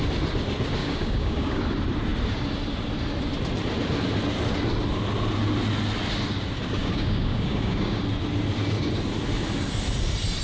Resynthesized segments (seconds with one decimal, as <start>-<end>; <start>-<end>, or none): 0.8-1.6; 6.8-8.0

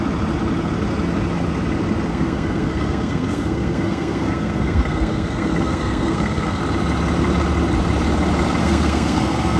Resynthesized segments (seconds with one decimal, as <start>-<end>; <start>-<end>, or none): 2.1-6.6; 8.6-9.6